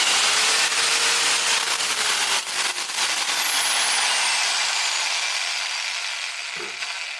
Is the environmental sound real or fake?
real